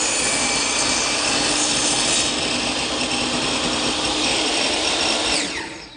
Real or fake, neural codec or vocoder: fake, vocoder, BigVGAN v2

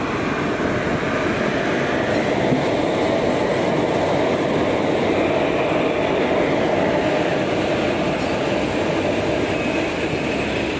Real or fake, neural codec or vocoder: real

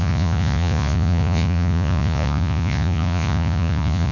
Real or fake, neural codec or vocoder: fake, vocoder, Vocos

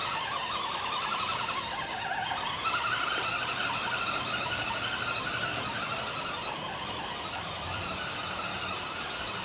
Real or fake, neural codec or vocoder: fake, vocoder, BigVGAN v2